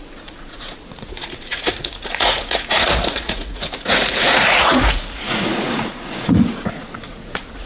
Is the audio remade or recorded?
remade